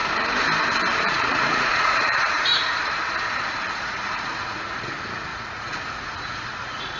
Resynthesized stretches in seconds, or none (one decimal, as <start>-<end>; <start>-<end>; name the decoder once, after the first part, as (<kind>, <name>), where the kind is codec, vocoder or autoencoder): 1.0-2.5 (vocoder, Vocos); 3.8-7.0

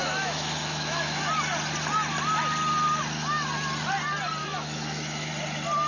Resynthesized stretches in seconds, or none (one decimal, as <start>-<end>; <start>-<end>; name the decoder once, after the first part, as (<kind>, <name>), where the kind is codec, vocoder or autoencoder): 0.0-1.2 (autoencoder, DAC-VAE); 4.4-5.3

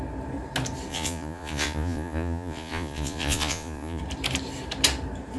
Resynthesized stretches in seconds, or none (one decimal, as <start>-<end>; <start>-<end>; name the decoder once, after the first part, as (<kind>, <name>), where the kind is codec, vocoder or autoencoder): 0.9-4.0 (vocoder, Vocos)

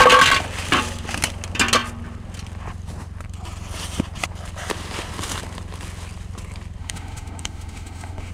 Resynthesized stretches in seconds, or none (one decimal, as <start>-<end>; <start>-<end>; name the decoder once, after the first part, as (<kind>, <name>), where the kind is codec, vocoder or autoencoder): 6.8-8.3 (autoencoder, DAC-VAE)